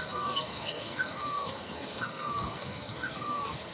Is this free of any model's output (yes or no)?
no